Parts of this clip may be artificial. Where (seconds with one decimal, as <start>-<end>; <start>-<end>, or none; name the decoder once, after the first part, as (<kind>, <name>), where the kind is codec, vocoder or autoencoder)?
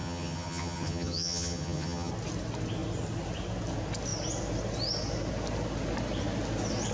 0.0-2.1 (vocoder, HiFi-GAN)